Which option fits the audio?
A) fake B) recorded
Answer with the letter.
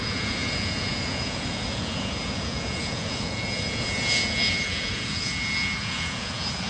A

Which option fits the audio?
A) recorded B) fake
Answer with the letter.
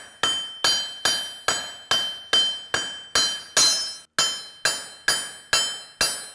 A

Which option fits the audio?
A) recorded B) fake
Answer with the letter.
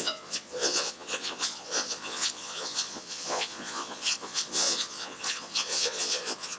B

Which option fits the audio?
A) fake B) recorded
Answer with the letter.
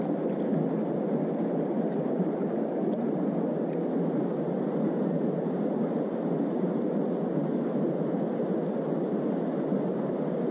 B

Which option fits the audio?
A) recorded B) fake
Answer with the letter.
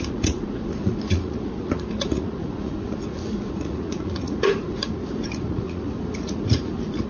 B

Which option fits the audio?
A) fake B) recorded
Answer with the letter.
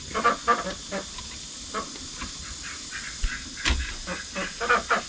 B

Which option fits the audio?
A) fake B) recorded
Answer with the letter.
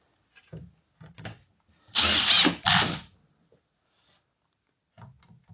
B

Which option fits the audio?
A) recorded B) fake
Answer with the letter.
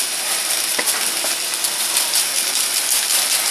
A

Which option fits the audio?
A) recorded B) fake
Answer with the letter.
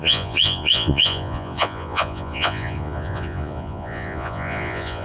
B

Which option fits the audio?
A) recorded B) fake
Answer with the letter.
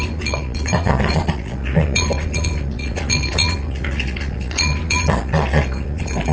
B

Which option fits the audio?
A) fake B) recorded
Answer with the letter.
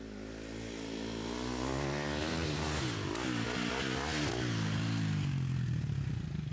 B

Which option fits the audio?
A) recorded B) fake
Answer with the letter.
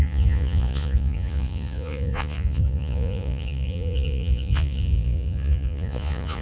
B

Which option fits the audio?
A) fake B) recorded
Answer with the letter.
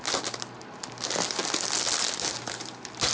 B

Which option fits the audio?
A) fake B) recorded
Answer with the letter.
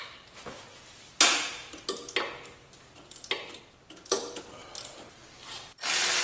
B